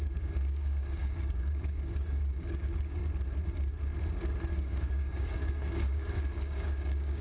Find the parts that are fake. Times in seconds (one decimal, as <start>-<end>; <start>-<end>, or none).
0.0-3.0; 4.5-7.2